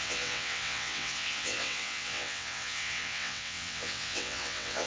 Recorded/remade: remade